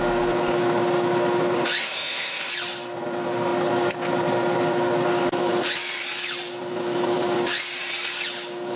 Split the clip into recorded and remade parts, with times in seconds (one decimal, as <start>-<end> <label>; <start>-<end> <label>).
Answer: 0.0-1.8 recorded; 1.8-2.5 remade; 2.5-8.8 recorded